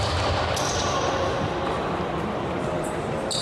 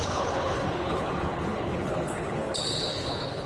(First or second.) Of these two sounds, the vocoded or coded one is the second